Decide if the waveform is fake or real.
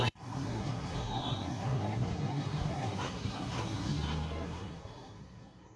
fake